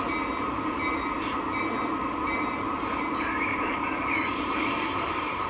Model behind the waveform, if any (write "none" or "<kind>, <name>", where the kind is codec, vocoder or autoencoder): vocoder, BigVGAN v2